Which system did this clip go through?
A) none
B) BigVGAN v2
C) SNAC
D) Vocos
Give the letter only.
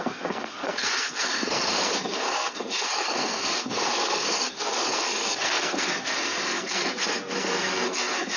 C